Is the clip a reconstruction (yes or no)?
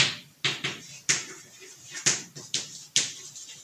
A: no